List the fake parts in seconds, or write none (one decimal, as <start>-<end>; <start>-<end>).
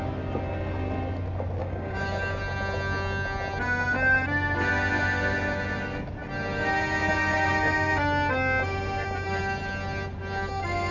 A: 1.6-2.4